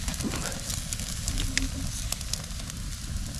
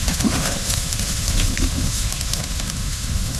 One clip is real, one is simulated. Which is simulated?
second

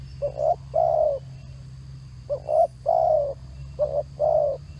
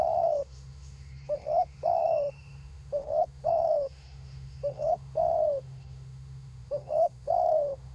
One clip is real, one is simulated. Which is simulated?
second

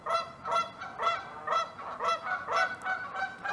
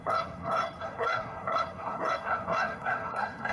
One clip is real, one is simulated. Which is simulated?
second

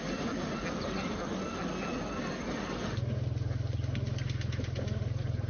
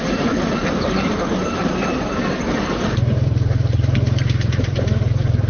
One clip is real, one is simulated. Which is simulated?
second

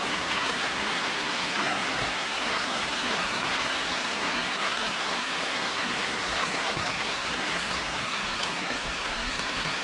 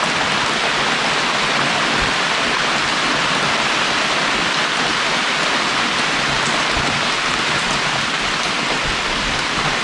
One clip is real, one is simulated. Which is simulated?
first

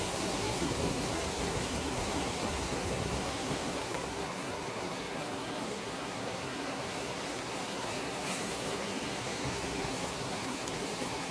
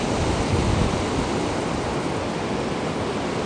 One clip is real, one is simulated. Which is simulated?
first